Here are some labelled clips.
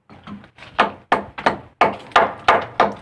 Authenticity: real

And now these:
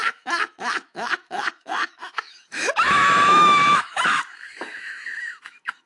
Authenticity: fake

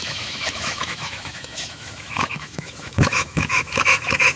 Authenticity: fake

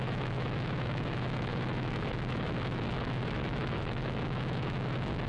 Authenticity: fake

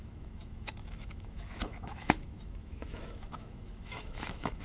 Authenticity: fake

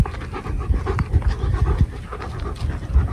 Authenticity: real